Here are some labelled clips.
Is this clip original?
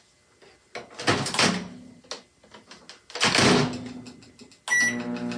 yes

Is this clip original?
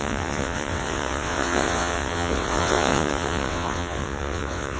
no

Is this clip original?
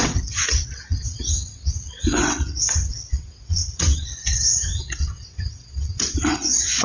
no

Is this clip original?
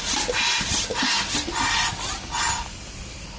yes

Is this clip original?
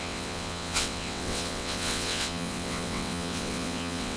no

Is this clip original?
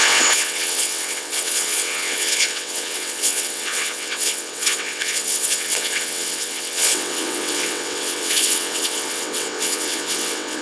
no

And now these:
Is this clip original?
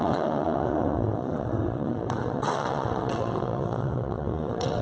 no